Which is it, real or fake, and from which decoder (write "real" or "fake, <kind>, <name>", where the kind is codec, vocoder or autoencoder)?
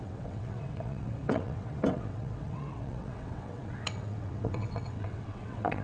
fake, vocoder, WaveNeXt